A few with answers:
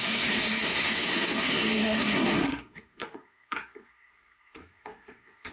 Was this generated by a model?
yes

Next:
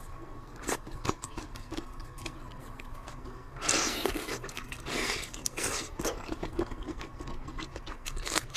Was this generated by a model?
yes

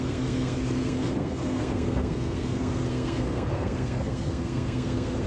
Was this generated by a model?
yes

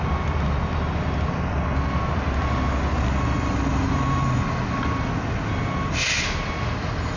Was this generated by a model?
no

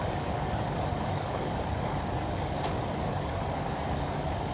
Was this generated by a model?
yes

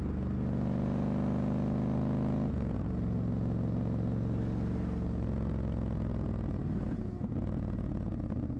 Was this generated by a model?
no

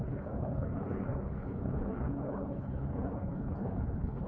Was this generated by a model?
yes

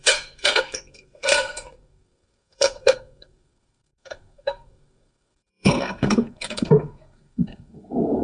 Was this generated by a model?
yes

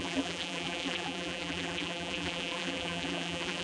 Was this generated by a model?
yes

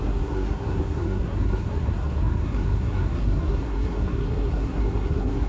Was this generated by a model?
yes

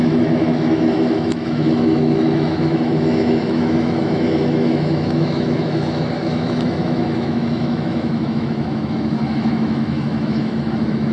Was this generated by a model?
yes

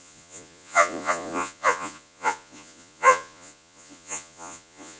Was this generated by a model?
yes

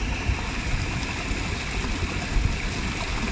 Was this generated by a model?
no